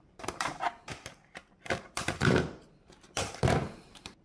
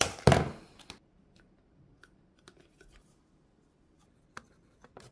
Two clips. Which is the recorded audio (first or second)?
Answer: second